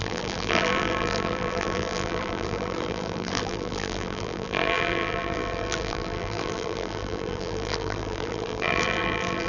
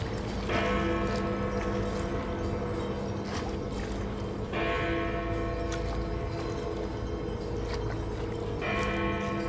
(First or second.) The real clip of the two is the second